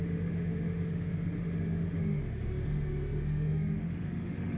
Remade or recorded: remade